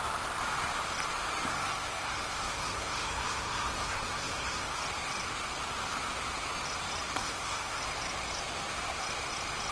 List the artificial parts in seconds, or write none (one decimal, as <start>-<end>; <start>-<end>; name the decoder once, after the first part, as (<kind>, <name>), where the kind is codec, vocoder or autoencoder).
1.5-4.8 (codec, SNAC); 7.2-7.8

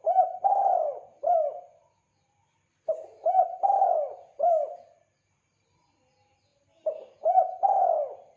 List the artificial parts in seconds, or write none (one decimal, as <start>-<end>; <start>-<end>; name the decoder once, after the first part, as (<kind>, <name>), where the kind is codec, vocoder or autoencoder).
none

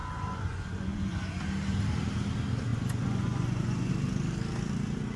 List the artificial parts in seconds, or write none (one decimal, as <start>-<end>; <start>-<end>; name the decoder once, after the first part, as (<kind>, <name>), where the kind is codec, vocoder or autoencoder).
0.0-1.4 (vocoder, Vocos); 2.7-3.9

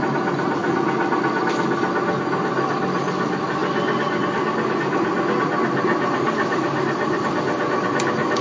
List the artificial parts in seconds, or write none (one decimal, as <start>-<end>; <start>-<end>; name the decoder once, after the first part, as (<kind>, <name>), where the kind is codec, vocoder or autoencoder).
none

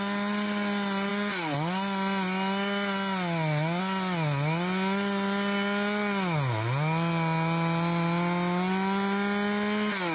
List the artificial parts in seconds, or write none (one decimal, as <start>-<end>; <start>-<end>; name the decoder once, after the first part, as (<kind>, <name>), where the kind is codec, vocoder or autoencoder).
none

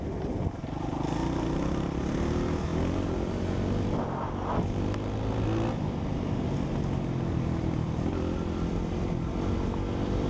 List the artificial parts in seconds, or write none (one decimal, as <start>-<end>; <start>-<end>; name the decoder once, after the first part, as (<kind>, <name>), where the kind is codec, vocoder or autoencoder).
none

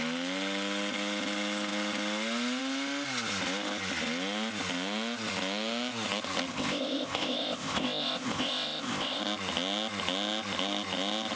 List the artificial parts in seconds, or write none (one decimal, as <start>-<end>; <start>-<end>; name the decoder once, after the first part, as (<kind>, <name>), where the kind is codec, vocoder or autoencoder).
6.5-9.2 (codec, ZipCodec)

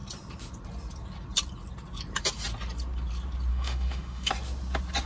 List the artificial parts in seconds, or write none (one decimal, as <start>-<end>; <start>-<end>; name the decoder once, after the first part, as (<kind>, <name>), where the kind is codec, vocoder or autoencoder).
3.5-4.3 (autoencoder, DAC-VAE)